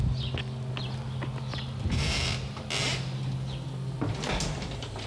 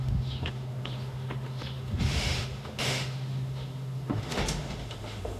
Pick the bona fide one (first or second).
first